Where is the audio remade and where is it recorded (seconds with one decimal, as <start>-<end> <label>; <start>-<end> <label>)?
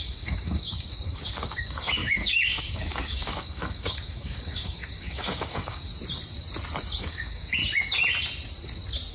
0.0-5.9 remade; 5.9-7.0 recorded; 7.0-7.6 remade; 7.6-9.1 recorded